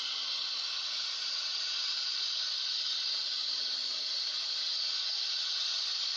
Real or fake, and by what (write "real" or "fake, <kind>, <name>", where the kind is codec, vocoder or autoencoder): real